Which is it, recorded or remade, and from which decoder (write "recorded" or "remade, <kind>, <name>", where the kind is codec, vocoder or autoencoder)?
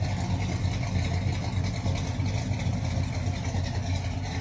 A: recorded